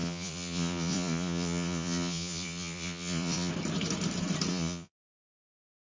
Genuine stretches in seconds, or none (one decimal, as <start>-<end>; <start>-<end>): 3.5-4.5

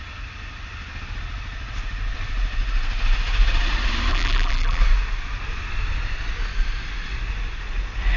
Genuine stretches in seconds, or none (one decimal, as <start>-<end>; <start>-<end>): 0.0-4.1; 4.8-8.2

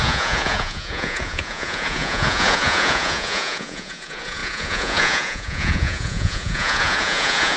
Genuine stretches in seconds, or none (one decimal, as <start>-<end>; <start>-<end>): none

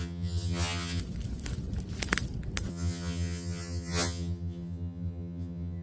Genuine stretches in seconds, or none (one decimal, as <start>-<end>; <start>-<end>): 1.0-2.7